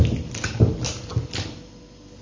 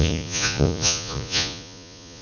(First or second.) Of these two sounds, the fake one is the second